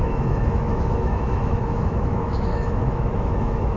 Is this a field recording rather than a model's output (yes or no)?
no